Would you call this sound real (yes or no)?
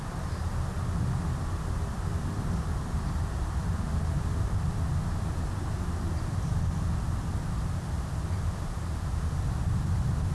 yes